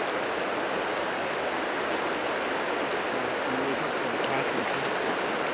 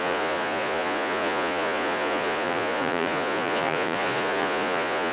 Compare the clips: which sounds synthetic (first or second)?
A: second